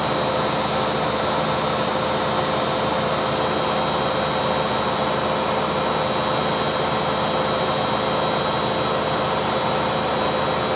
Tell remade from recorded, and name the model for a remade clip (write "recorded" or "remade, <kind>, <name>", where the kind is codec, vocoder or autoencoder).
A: recorded